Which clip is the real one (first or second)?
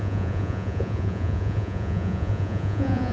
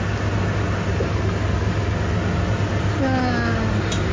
second